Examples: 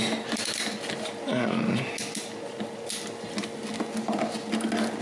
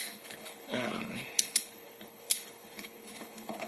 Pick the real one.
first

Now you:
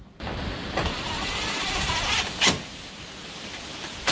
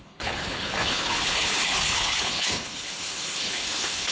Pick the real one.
first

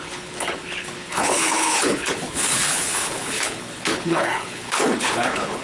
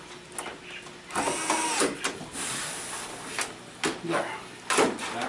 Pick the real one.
second